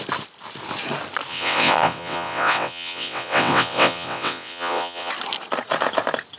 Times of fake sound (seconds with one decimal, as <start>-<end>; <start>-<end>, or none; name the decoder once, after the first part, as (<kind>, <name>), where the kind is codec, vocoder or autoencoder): 1.3-5.1 (vocoder, WaveNeXt)